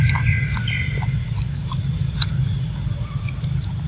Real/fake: real